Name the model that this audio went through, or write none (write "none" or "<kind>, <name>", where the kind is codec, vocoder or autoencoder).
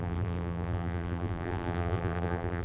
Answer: vocoder, BigVGAN v2